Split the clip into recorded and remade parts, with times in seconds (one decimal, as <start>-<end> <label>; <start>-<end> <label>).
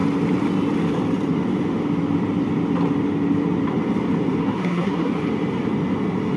0.0-4.4 recorded; 4.4-5.1 remade; 5.1-6.4 recorded